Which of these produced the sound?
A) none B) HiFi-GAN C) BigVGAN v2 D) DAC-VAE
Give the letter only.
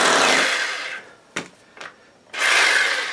A